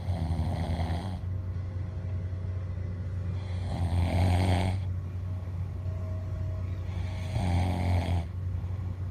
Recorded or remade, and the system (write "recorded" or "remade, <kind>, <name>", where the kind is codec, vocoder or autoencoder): recorded